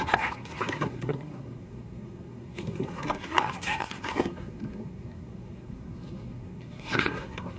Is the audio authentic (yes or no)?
no